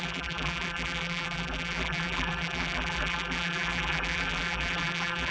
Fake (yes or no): yes